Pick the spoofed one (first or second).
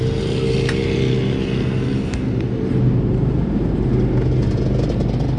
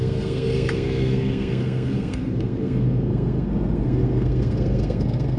second